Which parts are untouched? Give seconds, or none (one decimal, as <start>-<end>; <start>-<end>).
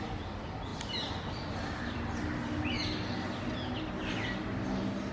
2.8-5.1